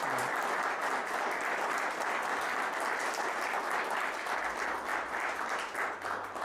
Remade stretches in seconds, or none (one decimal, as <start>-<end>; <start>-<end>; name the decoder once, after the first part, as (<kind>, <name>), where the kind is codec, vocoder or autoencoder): none